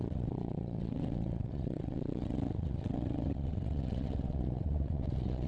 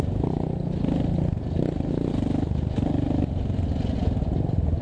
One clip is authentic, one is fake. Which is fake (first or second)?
first